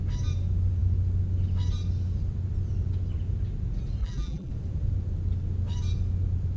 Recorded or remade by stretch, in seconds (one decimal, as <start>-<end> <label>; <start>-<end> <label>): 0.0-4.0 recorded; 4.0-4.5 remade; 4.5-6.6 recorded